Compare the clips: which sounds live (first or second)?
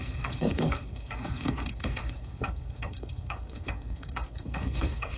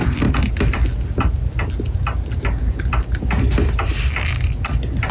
second